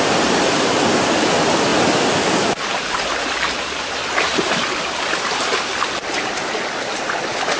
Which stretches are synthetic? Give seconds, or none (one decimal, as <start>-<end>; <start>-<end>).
none